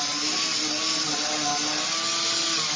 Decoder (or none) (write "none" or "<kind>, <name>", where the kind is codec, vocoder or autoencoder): none